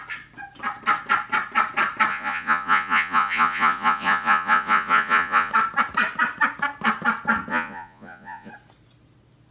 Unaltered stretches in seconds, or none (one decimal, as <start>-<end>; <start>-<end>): 0.0-2.1; 5.5-7.5; 8.5-9.5